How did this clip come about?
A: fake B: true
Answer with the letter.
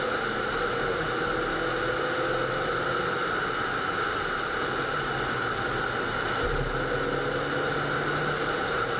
B